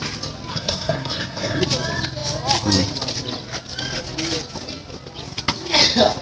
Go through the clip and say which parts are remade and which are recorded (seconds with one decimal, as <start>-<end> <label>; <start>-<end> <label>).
0.0-0.5 recorded; 0.5-1.6 remade; 1.6-6.2 recorded